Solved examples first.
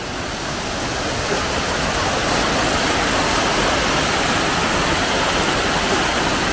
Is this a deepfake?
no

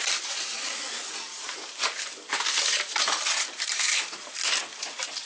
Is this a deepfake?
no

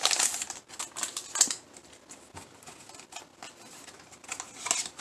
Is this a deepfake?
no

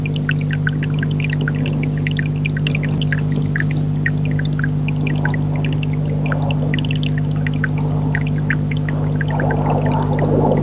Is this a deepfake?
no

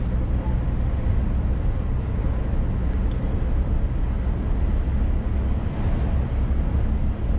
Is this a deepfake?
no